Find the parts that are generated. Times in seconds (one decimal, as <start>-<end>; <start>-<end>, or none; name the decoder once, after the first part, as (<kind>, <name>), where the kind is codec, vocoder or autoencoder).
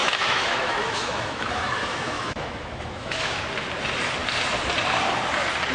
0.0-3.4 (autoencoder, DAC-VAE)